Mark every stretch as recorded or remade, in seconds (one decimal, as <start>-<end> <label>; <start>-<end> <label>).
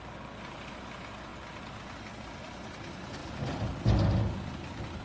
0.0-5.0 recorded